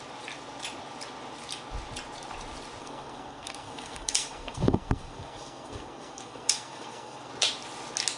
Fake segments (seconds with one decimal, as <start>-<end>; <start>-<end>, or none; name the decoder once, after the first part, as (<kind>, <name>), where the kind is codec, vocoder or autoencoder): 2.8-7.3 (codec, SNAC)